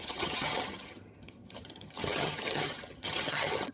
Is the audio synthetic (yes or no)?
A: yes